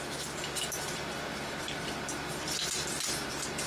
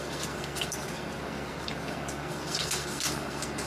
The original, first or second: first